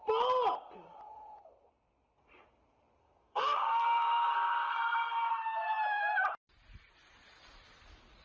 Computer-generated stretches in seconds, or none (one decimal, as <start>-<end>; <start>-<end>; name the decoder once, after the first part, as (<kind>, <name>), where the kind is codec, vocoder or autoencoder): 3.0-5.3 (codec, SNAC)